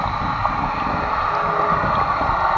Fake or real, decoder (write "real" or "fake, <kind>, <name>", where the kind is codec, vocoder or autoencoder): real